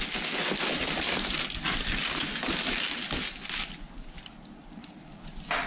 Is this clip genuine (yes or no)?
yes